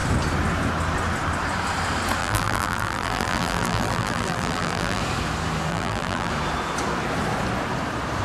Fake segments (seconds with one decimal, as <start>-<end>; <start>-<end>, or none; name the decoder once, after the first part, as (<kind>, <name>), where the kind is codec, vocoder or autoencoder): 2.2-5.0 (vocoder, BigVGAN v2); 5.7-6.3